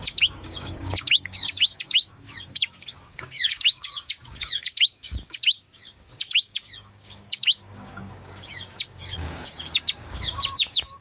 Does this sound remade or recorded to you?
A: remade